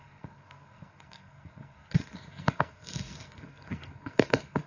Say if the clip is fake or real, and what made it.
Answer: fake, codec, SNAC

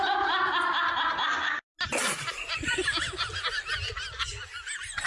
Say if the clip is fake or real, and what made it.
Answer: real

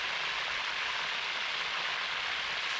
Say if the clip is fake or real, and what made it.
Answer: real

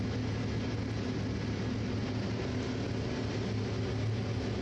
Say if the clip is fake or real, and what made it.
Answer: real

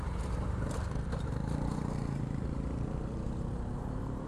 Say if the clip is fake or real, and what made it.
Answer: fake, vocoder, BigVGAN v2